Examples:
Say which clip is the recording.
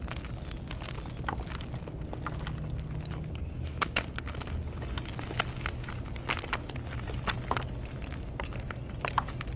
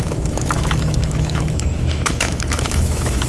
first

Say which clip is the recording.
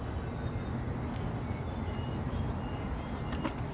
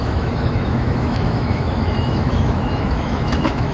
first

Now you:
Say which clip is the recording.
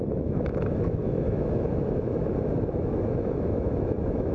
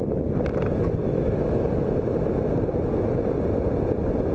second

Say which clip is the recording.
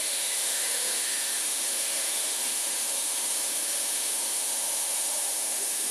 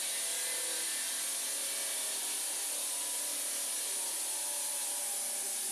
second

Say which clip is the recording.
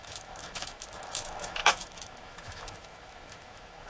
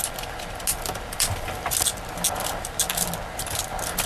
second